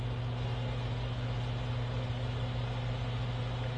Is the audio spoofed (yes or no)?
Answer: no